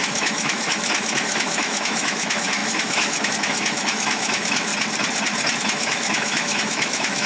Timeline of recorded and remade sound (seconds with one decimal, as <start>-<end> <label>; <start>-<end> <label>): 0.0-4.7 remade; 4.7-5.6 recorded; 5.6-7.3 remade